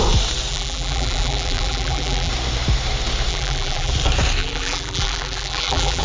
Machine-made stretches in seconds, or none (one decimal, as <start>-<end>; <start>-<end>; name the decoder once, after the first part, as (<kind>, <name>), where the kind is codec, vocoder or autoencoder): 0.5-2.3 (vocoder, BigVGAN v2); 3.3-3.9; 4.4-6.0